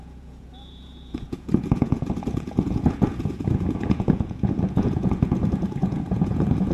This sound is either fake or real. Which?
fake